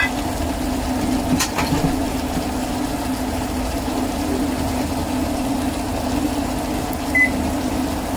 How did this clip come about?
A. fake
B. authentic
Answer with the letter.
B